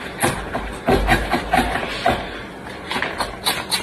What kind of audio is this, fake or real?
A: real